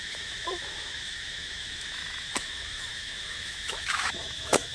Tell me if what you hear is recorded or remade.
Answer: remade